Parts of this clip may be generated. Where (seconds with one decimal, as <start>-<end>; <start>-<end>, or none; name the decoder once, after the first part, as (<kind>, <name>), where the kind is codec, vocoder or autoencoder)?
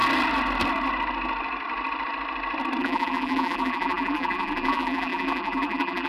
2.8-6.1 (vocoder, BigVGAN v2)